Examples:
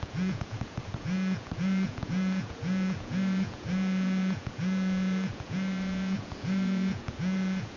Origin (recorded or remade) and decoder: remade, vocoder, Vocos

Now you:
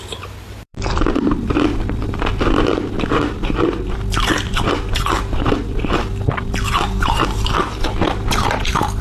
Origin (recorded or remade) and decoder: remade, vocoder, BigVGAN v2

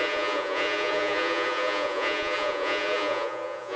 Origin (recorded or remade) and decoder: remade, vocoder, Vocos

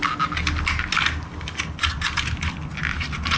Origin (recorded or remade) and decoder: recorded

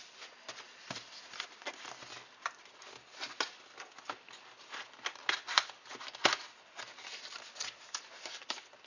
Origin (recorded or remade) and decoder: recorded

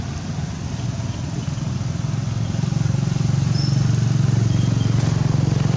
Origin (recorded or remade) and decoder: recorded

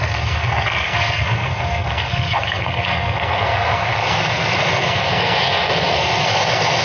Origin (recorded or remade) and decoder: remade, codec, SNAC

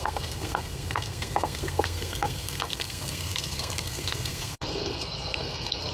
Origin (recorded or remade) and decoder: remade, codec, SNAC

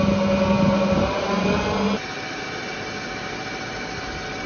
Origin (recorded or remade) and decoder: recorded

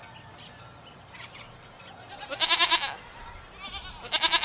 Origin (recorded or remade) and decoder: recorded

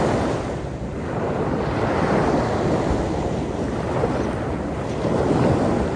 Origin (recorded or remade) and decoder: recorded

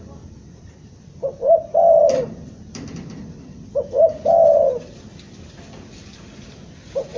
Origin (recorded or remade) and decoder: recorded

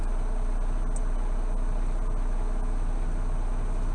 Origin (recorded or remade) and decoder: recorded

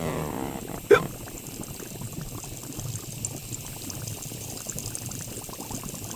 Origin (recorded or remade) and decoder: recorded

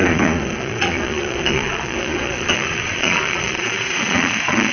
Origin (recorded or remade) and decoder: remade, vocoder, Vocos